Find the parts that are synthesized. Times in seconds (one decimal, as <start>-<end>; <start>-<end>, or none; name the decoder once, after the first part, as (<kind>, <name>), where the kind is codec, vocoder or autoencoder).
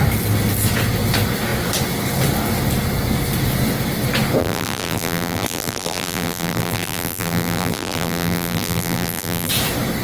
4.4-9.5 (vocoder, BigVGAN v2)